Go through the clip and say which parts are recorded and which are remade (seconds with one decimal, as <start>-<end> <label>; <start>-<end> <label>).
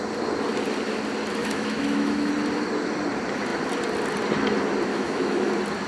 0.0-1.4 recorded; 1.4-2.3 remade; 2.3-4.9 recorded; 4.9-5.5 remade; 5.5-5.9 recorded